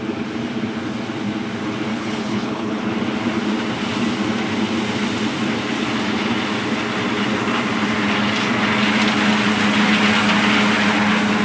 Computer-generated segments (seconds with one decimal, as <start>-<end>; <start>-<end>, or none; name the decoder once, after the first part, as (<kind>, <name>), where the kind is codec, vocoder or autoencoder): 1.9-2.8 (codec, HILCodec)